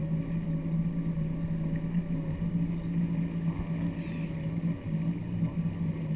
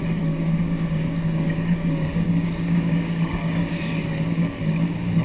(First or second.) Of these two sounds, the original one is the first